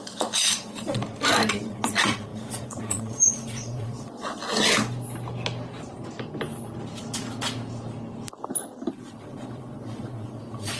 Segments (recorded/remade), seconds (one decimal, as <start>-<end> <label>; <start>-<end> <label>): 0.0-1.0 remade; 1.0-1.5 recorded; 1.5-4.4 remade; 4.4-8.9 recorded; 8.9-10.8 remade